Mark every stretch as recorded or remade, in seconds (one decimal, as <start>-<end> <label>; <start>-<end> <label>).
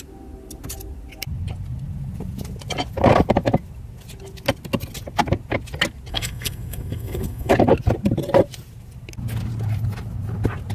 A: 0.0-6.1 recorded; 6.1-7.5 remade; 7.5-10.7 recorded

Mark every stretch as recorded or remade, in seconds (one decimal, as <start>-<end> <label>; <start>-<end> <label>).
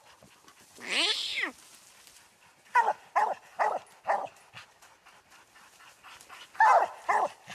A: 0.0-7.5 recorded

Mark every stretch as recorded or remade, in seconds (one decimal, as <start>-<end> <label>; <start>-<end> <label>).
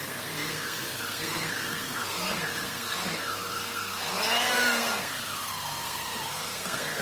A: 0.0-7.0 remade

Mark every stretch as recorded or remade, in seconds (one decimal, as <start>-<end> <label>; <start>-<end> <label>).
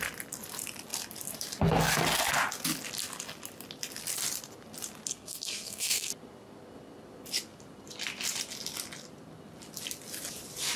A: 0.0-5.1 recorded; 5.1-6.1 remade; 6.1-10.8 recorded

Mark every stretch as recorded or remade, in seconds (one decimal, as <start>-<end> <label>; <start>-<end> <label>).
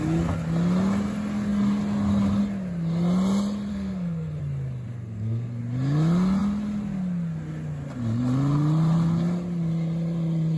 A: 0.0-3.7 recorded; 3.7-4.4 remade; 4.4-4.9 recorded; 4.9-5.6 remade; 5.6-10.6 recorded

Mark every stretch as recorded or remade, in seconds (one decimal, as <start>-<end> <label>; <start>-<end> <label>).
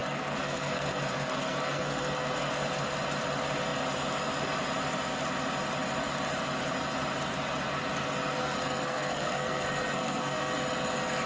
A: 0.0-2.5 remade; 2.5-8.4 recorded; 8.4-10.5 remade; 10.5-11.3 recorded